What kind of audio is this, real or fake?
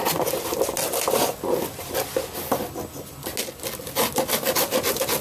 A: real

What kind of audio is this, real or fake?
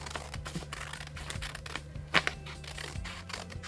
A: real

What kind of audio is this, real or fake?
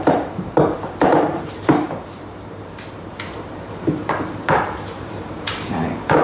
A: fake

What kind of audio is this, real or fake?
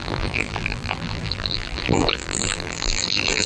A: fake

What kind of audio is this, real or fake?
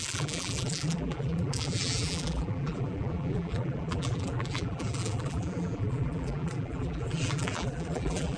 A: fake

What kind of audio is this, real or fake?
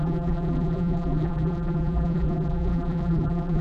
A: fake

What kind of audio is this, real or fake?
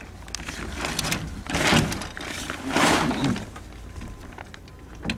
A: real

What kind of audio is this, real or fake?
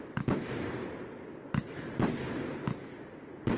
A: fake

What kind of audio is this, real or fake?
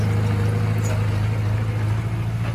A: real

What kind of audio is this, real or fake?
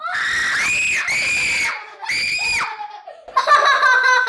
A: real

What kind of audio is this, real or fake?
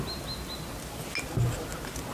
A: real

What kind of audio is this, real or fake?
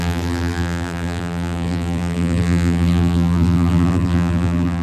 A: fake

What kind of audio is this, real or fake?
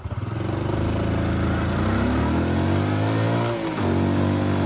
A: real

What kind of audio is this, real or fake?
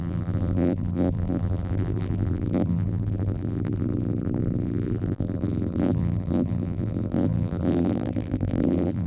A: fake